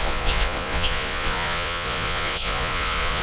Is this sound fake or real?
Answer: fake